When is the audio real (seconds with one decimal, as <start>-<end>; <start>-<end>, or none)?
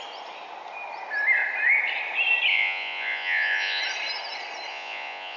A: 0.0-2.5; 3.8-4.7